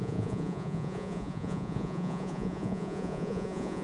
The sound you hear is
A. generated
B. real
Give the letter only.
A